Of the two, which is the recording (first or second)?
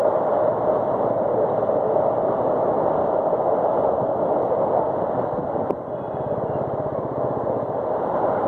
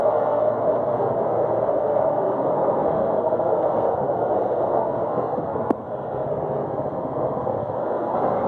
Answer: first